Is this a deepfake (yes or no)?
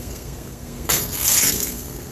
yes